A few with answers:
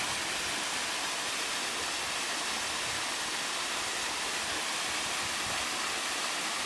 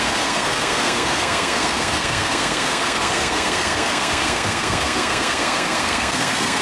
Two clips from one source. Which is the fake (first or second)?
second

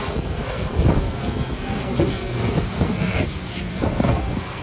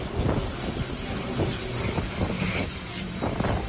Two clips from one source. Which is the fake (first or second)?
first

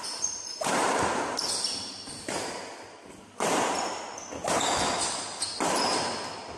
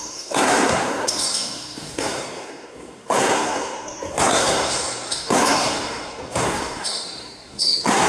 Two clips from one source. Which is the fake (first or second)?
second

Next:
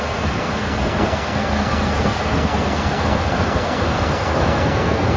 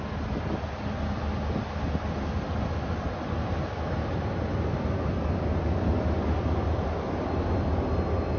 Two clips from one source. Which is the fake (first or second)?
first